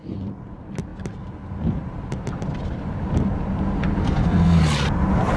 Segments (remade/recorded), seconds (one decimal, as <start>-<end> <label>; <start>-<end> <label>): 0.0-4.0 recorded; 4.0-4.6 remade; 4.6-5.4 recorded